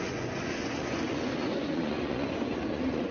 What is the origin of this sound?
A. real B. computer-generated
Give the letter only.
B